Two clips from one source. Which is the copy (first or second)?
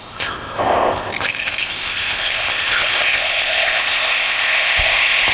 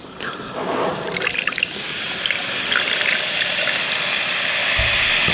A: first